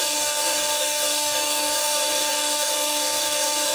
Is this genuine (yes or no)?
no